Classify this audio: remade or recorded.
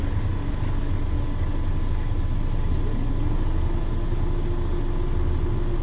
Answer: recorded